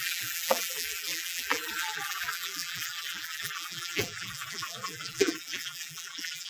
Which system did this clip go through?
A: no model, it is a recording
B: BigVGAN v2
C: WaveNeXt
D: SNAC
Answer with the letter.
B